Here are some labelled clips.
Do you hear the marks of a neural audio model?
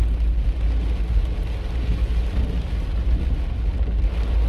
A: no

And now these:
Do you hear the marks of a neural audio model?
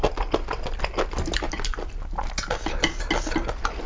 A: no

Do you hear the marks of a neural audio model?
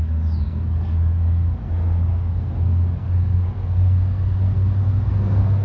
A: yes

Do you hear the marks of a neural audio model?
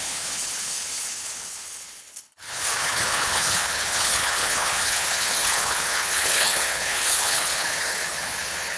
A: yes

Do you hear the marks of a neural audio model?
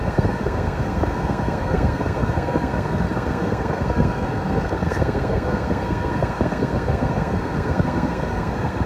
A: yes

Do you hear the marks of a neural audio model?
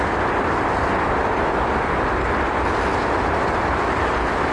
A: no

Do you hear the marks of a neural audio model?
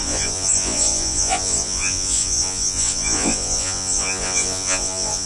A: yes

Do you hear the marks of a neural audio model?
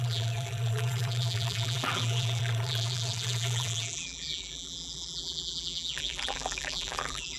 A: yes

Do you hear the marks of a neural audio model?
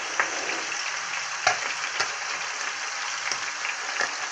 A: no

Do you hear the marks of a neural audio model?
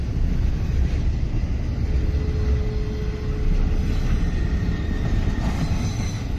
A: no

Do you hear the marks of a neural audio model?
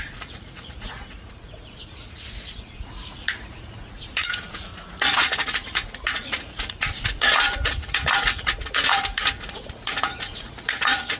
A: yes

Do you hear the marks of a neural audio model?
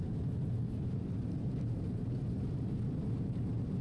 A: no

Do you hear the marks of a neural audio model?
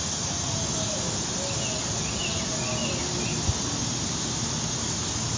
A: no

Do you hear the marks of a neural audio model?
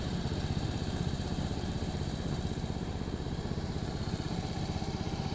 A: yes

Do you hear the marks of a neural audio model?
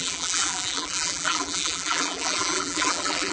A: yes